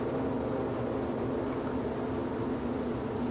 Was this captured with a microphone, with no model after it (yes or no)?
yes